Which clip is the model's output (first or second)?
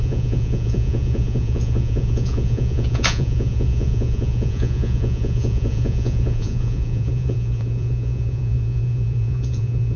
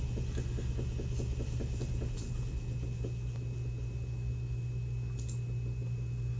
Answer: first